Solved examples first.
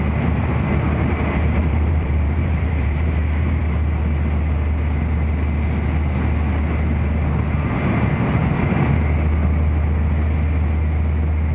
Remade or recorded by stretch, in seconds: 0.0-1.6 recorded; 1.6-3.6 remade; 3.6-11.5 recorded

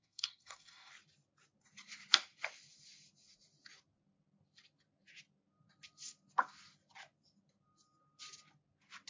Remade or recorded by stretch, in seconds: 0.0-0.9 remade; 0.9-9.1 recorded

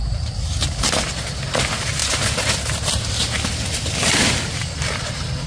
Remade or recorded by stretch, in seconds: 0.0-5.5 recorded

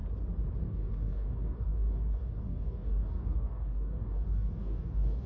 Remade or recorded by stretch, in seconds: 0.0-0.6 recorded; 0.6-5.3 remade

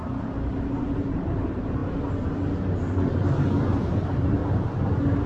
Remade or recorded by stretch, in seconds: 0.0-0.8 recorded; 0.8-1.8 remade; 1.8-3.8 recorded; 3.8-4.4 remade; 4.4-5.3 recorded